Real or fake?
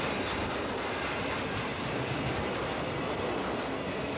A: real